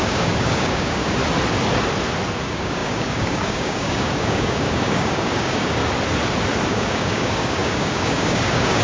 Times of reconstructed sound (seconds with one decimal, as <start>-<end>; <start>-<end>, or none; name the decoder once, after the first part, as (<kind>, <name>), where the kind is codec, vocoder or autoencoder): 0.0-1.2 (codec, DAC); 2.4-5.8; 6.7-8.8